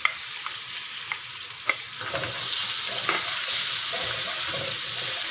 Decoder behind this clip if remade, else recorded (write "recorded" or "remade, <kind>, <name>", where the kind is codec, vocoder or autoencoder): recorded